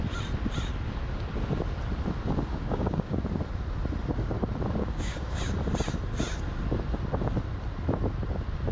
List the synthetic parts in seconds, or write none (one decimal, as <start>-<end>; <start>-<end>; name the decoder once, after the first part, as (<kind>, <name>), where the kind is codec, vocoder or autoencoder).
2.5-3.2 (codec, DAC); 4.8-5.4